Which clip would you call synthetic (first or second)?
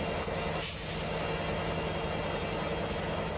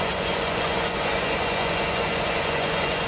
second